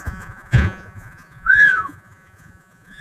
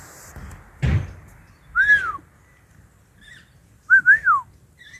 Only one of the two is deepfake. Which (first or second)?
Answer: first